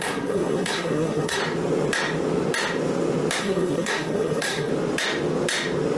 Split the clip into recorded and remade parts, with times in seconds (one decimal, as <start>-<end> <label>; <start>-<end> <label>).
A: 0.0-1.4 remade; 1.4-3.4 recorded; 3.4-4.7 remade; 4.7-6.0 recorded